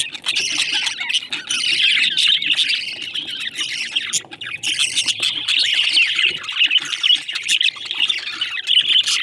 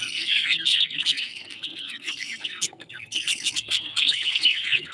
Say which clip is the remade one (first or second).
second